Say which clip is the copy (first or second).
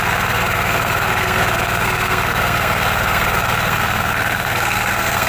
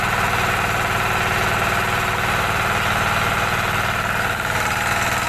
first